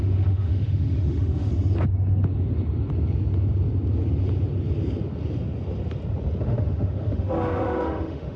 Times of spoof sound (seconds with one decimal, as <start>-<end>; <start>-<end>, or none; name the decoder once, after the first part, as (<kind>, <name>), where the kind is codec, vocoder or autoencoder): 0.0-1.5 (autoencoder, DAC-VAE); 6.4-8.4